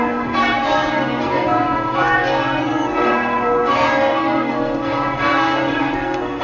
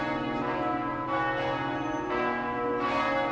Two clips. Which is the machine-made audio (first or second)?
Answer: first